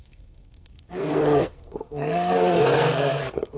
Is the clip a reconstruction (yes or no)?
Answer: yes